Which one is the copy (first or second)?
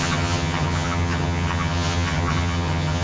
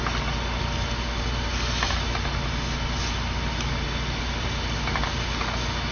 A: first